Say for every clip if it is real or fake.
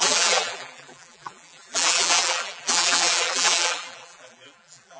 fake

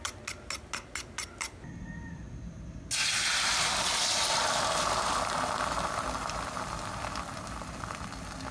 real